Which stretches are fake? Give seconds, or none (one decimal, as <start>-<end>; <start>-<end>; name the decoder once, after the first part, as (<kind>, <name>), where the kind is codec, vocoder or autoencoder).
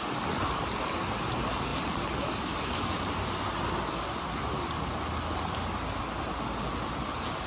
none